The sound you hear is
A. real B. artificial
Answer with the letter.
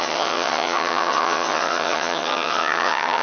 B